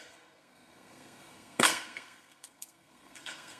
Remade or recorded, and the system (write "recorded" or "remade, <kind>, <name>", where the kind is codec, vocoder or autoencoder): remade, codec, SNAC